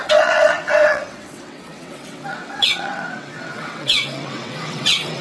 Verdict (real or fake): fake